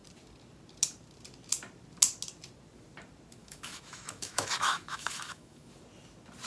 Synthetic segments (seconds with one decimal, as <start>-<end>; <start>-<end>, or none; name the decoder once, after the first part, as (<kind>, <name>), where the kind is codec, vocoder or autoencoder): 3.4-5.7 (autoencoder, DAC-VAE)